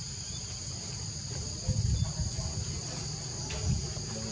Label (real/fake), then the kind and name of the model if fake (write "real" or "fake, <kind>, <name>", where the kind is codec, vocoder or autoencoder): real